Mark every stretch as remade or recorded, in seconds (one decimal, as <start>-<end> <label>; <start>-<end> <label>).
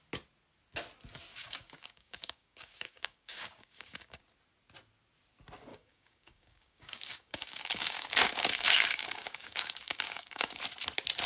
0.0-1.3 recorded; 1.3-4.2 remade; 4.2-5.7 recorded; 5.7-10.6 remade; 10.6-11.3 recorded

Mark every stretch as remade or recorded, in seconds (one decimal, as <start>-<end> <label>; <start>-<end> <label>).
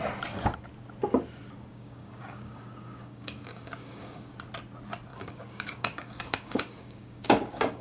0.0-1.7 recorded; 1.7-4.3 remade; 4.3-5.1 recorded; 5.1-7.8 remade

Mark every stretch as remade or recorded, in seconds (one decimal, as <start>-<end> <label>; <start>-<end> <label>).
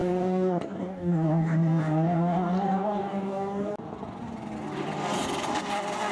0.0-3.7 remade; 3.7-6.1 recorded